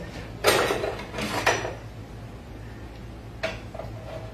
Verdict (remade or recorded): recorded